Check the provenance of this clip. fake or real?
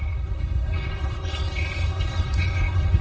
fake